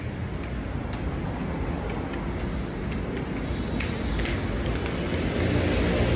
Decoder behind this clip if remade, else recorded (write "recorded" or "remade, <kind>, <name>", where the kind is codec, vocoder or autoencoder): recorded